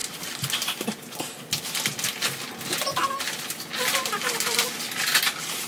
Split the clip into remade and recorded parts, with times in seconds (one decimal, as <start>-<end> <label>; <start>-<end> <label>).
0.0-5.7 recorded